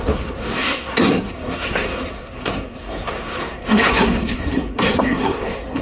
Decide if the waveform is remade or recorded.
remade